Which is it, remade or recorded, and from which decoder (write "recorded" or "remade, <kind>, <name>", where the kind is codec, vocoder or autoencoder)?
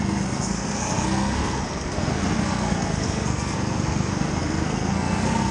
remade, codec, SNAC